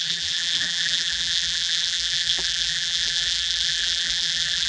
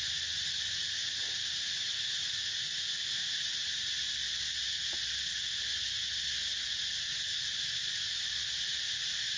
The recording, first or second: second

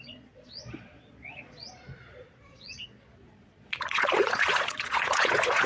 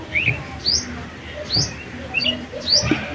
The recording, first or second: second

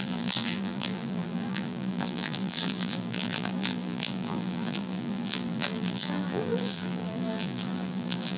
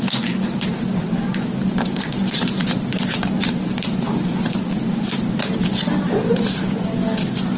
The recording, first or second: second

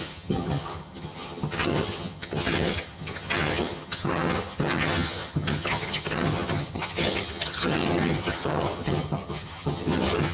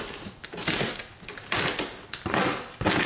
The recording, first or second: second